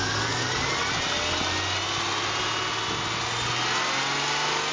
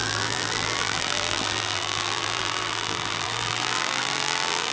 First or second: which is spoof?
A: second